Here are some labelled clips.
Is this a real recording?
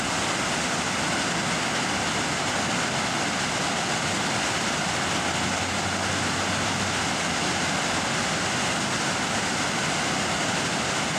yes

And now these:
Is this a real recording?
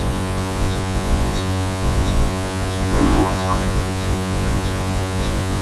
no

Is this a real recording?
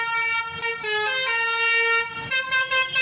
yes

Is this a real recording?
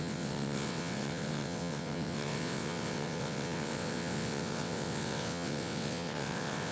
no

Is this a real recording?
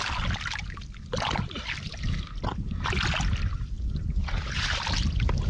yes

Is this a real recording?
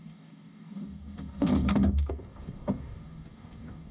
no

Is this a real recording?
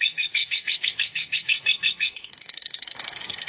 no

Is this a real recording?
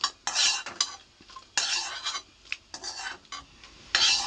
yes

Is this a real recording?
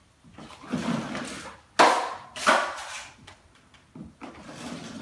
yes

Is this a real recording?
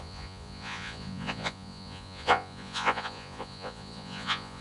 no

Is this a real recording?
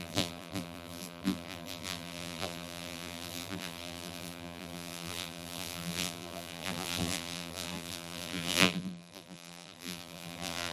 no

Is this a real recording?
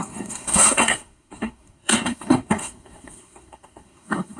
no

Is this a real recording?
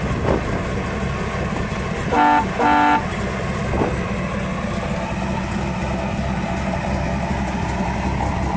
yes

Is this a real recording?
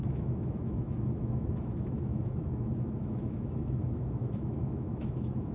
no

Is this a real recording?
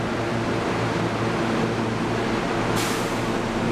yes